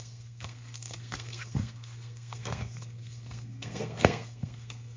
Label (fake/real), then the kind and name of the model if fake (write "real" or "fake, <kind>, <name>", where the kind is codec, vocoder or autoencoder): fake, codec, SNAC